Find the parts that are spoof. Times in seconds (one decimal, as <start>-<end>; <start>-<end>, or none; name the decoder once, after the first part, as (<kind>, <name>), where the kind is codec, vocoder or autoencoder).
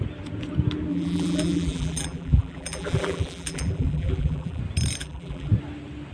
0.9-4.6 (vocoder, BigVGAN v2); 5.0-5.5